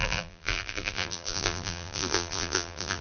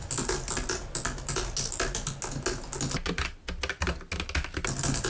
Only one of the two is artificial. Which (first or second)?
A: first